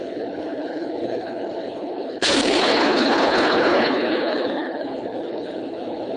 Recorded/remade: remade